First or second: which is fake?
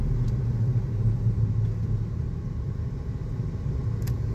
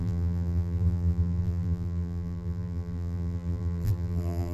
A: second